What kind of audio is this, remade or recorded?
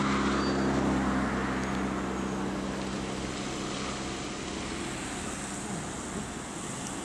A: recorded